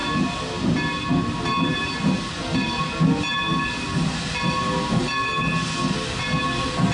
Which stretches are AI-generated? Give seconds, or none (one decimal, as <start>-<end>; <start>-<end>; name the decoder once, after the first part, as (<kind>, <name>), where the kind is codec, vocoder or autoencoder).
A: none